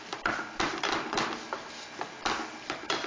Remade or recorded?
recorded